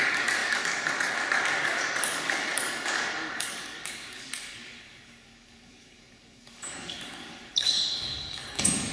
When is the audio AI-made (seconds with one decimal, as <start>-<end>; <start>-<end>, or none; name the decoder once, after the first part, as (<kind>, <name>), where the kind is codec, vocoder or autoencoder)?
0.0-8.9 (codec, DAC)